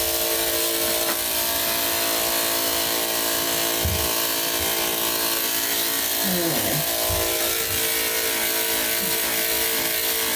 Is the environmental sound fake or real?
real